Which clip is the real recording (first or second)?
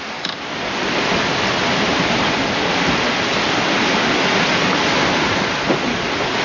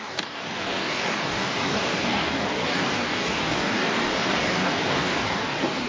first